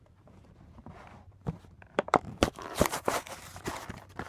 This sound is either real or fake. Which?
fake